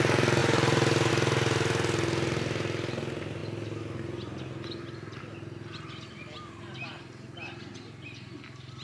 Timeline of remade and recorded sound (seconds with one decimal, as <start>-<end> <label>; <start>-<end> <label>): 0.0-0.4 recorded; 0.4-1.1 remade; 1.1-8.8 recorded